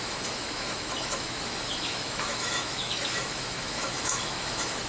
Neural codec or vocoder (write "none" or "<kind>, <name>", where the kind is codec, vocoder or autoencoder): autoencoder, DAC-VAE